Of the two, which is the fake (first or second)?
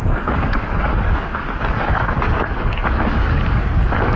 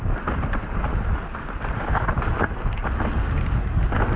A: first